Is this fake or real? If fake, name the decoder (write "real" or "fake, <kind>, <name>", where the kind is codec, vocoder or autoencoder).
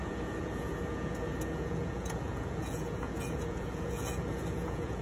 fake, vocoder, Vocos